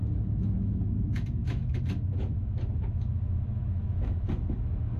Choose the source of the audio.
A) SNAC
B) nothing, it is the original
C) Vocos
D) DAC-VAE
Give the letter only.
D